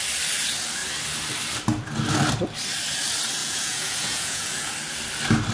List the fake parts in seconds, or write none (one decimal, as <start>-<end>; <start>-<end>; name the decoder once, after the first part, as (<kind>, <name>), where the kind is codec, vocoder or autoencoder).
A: 3.4-4.7 (vocoder, Vocos)